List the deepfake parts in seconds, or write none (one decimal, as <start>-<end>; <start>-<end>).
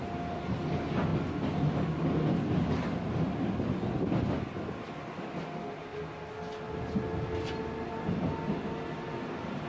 none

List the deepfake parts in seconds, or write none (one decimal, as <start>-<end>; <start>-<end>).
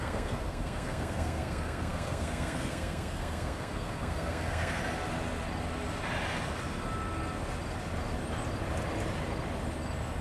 0.0-4.8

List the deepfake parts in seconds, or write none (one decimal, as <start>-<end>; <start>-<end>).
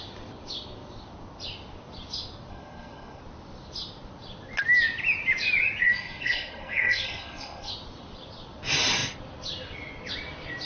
2.5-3.2; 5.9-7.7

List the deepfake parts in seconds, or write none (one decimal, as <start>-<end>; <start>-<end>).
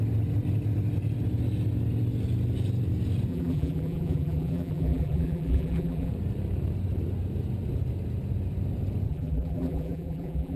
3.3-6.1; 9.1-10.6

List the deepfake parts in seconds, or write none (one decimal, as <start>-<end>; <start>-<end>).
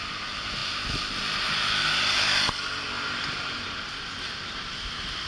none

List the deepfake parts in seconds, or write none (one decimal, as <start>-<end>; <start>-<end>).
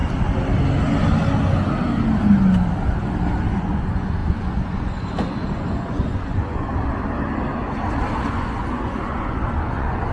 3.5-6.7; 8.3-10.1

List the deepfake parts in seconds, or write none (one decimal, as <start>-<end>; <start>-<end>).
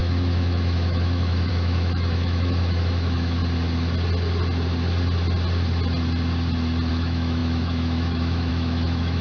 0.0-3.4; 6.9-9.2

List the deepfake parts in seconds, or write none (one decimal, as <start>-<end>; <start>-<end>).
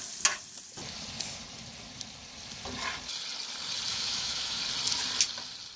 3.9-4.6